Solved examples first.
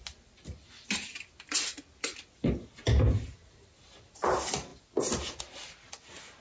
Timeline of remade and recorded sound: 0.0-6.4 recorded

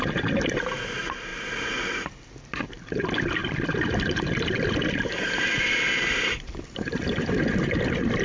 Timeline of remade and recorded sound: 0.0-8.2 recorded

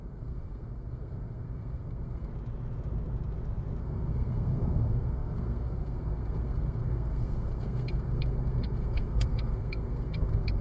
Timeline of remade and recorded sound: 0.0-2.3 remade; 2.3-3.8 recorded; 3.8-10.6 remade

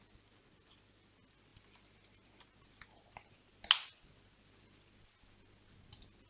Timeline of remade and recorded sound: 0.0-6.3 recorded

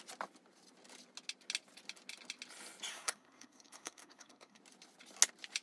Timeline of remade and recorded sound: 0.0-2.9 recorded; 2.9-4.6 remade; 4.6-5.6 recorded